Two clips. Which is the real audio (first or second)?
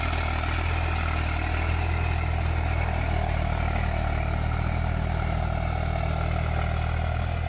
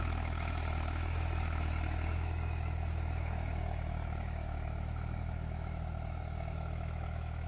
first